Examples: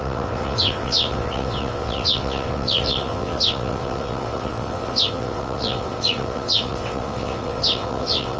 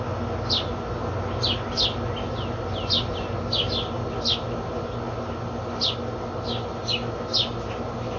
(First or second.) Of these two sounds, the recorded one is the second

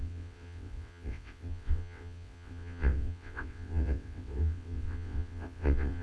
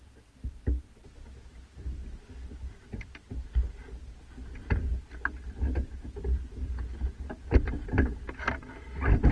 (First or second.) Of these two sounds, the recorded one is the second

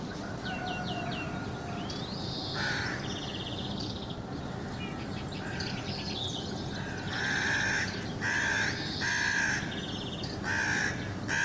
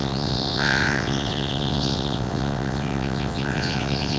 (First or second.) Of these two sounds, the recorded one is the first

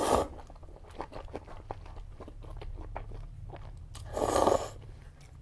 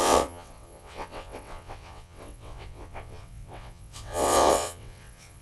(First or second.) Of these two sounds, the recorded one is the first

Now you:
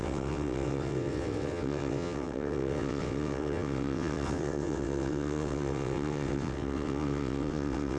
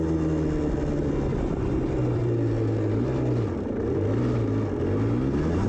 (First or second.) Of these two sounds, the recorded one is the second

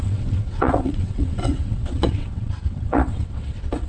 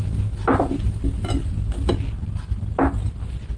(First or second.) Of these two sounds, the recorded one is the second